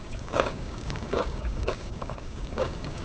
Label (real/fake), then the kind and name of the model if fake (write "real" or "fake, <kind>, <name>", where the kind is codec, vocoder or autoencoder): fake, codec, DAC